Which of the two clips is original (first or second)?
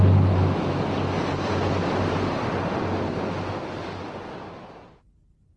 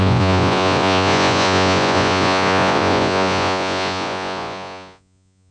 first